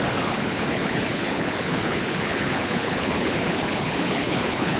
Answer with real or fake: fake